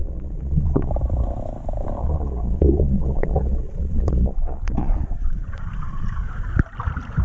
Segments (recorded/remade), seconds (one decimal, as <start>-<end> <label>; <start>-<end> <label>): 0.0-0.9 remade; 0.9-2.0 recorded; 2.0-6.3 remade; 6.3-7.2 recorded